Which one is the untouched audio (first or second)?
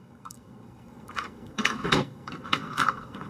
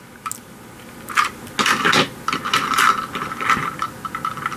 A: second